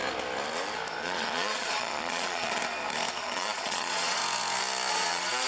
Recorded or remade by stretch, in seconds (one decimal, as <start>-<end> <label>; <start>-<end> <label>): 0.0-1.0 recorded; 1.0-2.6 remade; 2.6-3.2 recorded; 3.2-4.2 remade; 4.2-4.9 recorded; 4.9-5.5 remade